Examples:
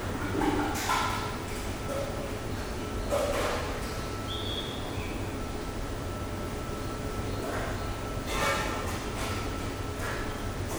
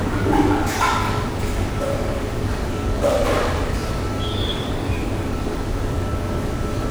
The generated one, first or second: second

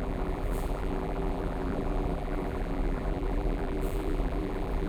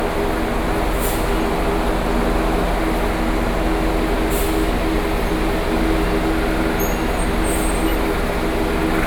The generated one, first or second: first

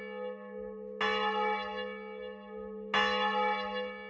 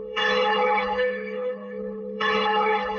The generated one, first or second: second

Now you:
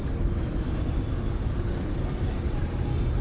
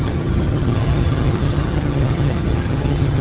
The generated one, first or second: second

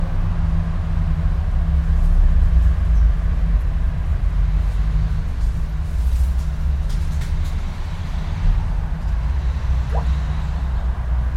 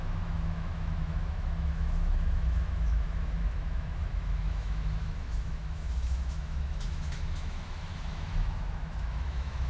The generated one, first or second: second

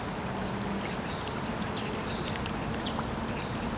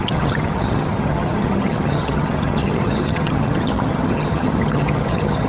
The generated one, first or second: second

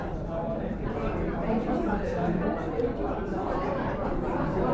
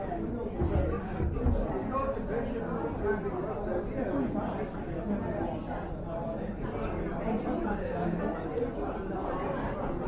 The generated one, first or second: first